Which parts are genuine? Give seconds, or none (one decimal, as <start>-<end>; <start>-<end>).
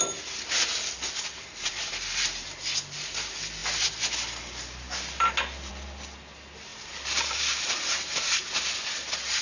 0.0-1.7; 2.6-6.7; 8.7-9.4